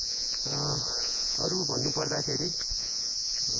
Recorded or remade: remade